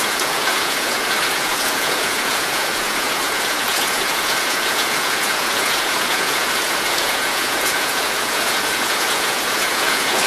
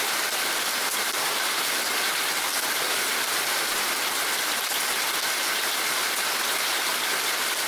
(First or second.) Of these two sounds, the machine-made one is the first